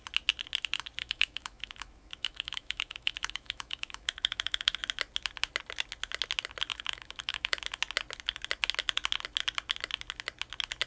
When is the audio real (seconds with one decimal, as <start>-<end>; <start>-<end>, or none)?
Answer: 0.0-1.0; 4.8-6.7; 7.6-10.9